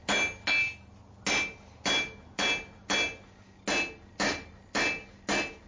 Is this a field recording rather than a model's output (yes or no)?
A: yes